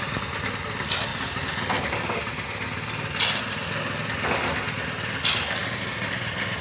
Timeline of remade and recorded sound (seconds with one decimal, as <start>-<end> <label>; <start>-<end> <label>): 0.0-6.6 recorded